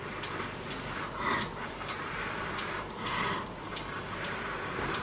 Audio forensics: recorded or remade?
remade